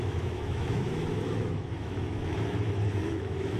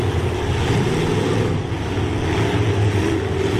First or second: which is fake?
first